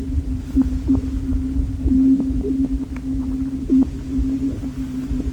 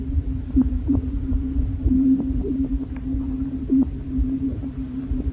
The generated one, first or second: second